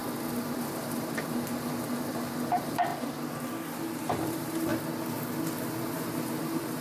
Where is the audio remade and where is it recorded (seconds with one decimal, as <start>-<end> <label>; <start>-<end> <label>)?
0.0-0.6 recorded; 0.6-2.9 remade; 2.9-3.8 recorded; 3.8-4.7 remade; 4.7-5.8 recorded; 5.8-6.8 remade